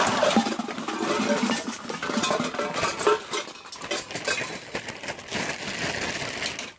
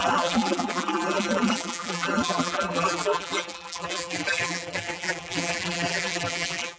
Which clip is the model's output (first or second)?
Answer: second